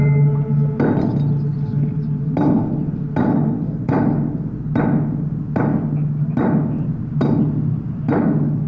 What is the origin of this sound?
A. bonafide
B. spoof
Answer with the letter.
A